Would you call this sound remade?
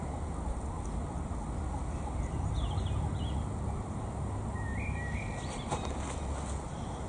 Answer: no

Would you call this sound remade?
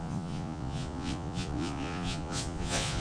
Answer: yes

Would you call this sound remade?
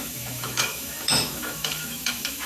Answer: yes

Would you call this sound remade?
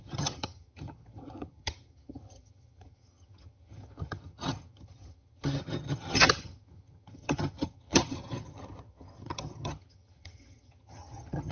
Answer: yes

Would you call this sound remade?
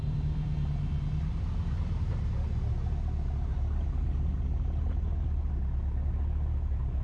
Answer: no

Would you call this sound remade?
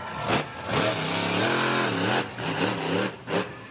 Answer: no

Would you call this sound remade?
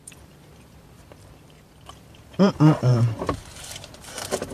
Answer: yes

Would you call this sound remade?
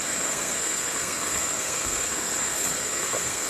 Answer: yes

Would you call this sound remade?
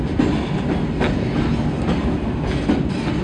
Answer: no